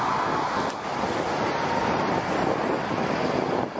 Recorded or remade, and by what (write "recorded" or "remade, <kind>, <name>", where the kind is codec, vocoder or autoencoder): recorded